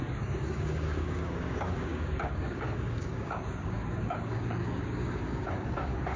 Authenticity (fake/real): fake